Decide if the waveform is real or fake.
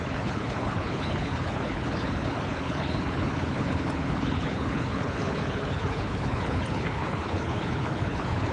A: fake